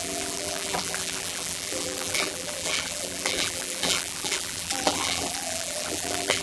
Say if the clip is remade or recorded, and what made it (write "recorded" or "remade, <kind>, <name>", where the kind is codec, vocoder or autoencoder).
remade, vocoder, BigVGAN v2